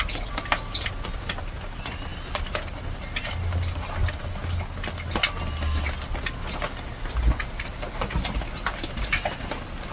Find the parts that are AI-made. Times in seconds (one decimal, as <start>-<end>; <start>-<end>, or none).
none

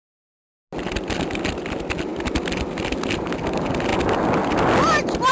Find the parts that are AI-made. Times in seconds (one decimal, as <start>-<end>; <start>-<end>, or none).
none

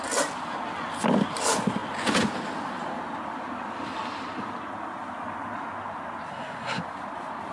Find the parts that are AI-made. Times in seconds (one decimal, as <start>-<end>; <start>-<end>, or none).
6.3-6.8

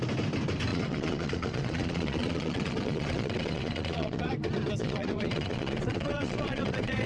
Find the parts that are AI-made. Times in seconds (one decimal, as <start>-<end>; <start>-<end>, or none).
0.7-4.3; 4.8-7.1

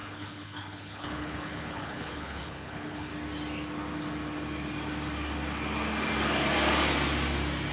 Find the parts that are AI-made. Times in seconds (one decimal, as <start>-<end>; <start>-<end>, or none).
0.0-3.1

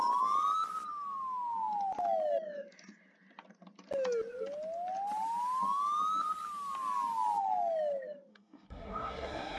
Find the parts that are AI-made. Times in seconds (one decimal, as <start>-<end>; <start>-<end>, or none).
8.3-9.6

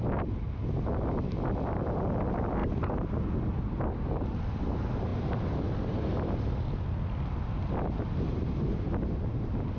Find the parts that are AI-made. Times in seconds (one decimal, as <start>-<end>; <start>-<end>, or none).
none

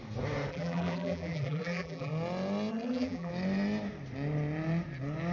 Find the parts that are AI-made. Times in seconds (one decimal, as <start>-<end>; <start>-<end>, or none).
0.5-2.1; 2.7-3.3